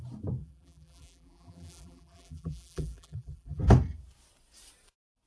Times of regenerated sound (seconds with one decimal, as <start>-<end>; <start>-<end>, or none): 0.4-3.6